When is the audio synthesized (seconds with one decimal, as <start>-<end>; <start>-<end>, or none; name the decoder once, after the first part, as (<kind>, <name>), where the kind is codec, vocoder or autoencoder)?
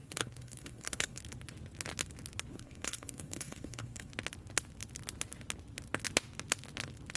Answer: 0.0-1.2 (codec, SNAC); 2.5-4.1